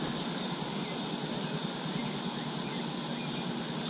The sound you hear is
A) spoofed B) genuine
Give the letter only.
B